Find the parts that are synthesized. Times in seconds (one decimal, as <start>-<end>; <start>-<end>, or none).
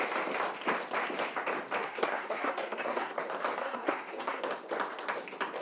1.8-3.2; 3.6-4.4